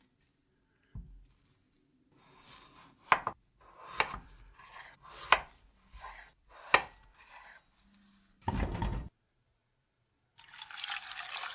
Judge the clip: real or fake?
real